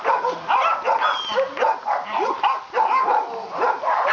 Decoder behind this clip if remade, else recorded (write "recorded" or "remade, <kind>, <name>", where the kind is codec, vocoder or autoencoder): recorded